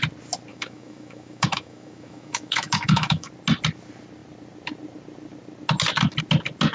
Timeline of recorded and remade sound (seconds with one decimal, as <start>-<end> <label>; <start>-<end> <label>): 0.0-0.5 recorded; 0.5-3.3 remade; 3.3-6.7 recorded